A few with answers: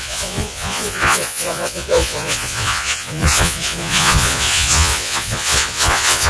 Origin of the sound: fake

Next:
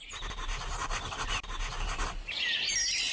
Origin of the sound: real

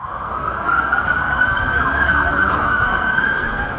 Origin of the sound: fake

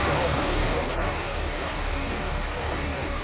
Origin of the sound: fake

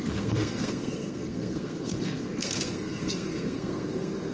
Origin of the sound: fake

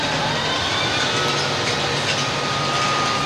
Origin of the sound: real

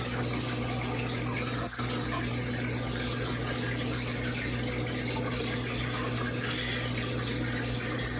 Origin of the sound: real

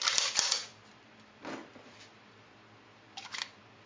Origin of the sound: fake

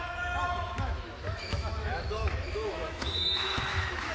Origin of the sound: fake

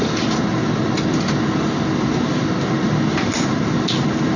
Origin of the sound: real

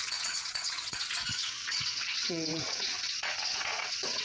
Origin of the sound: fake